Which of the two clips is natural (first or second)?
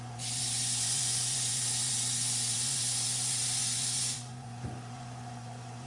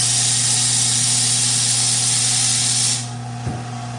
second